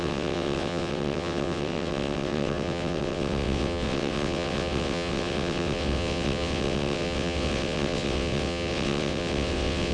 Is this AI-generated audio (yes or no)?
yes